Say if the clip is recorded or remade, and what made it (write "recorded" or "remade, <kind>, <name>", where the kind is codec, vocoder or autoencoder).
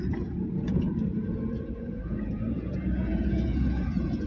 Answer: remade, vocoder, Vocos